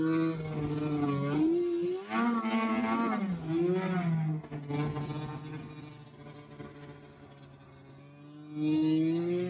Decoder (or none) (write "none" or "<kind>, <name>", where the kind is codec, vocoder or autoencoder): none